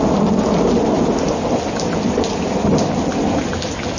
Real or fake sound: real